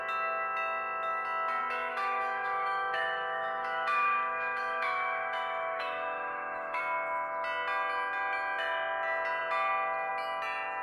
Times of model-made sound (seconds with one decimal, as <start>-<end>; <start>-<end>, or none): 1.9-6.8